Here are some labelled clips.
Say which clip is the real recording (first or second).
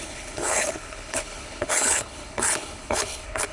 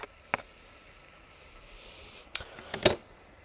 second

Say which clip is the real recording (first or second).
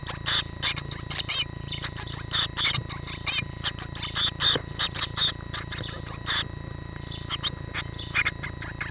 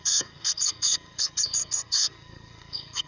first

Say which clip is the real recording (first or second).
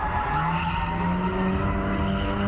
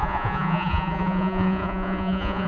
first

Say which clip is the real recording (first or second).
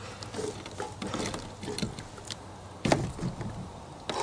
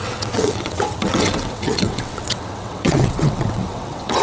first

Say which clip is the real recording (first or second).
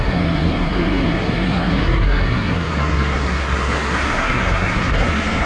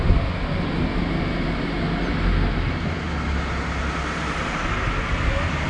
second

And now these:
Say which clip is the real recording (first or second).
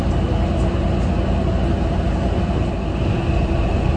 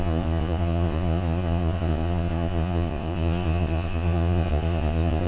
first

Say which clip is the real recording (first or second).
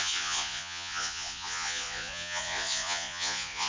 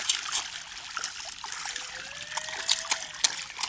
second